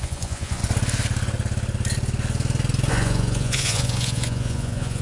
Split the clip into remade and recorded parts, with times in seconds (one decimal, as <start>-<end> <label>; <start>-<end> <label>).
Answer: 0.0-0.6 remade; 0.6-2.9 recorded; 2.9-5.0 remade